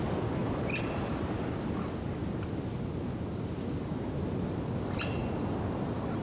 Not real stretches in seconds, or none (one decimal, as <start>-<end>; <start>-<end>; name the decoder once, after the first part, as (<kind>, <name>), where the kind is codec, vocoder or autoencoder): none